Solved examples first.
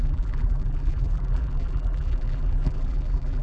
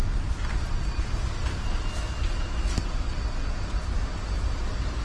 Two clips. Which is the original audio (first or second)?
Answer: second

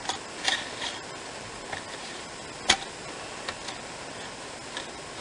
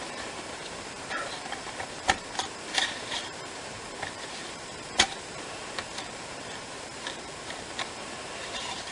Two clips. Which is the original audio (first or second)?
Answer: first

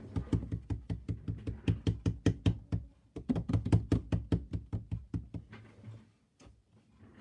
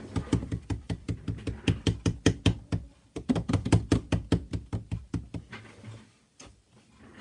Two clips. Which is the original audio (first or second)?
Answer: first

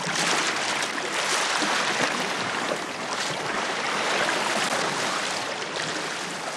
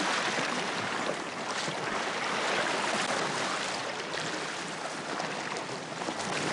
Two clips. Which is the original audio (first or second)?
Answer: second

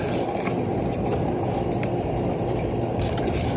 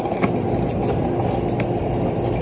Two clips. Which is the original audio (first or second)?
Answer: second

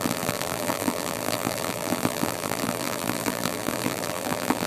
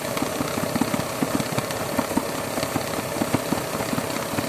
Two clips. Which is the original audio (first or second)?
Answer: second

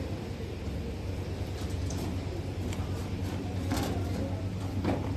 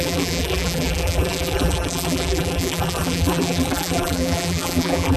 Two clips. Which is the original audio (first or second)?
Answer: first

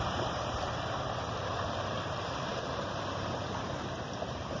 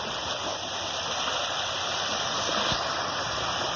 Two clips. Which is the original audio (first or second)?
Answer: second